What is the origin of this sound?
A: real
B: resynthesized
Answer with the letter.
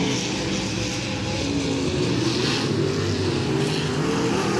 A